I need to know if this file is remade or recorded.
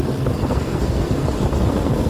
remade